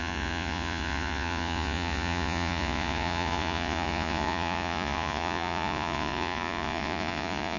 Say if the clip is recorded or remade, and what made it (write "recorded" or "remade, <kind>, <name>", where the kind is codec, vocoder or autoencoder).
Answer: remade, vocoder, Vocos